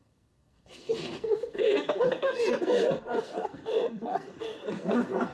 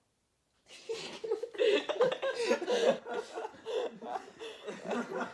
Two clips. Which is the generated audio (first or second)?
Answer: first